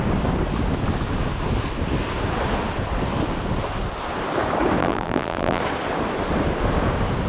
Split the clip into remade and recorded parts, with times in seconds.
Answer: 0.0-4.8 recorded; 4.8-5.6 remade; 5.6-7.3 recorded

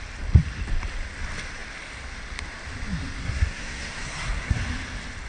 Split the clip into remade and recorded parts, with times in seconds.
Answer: 0.0-3.2 recorded; 3.2-4.6 remade; 4.6-5.3 recorded

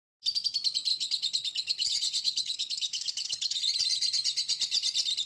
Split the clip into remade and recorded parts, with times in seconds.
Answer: 0.0-0.9 recorded; 0.9-3.6 remade; 3.6-5.3 recorded

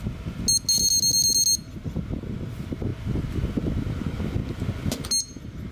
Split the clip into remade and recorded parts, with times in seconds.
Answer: 0.0-5.7 recorded

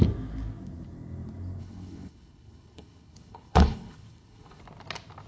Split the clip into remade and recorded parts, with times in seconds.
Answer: 0.0-1.6 recorded; 1.6-4.6 remade; 4.6-5.3 recorded